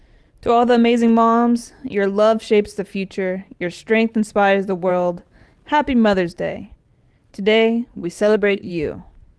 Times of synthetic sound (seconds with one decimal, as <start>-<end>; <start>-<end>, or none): 7.9-8.7